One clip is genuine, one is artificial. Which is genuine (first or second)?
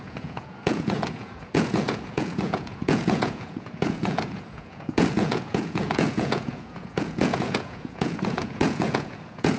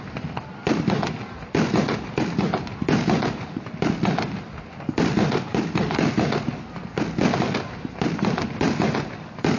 second